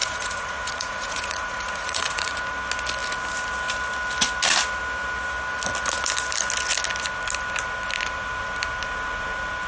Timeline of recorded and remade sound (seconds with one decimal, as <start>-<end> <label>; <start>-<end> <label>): 0.0-2.4 remade; 2.4-9.7 recorded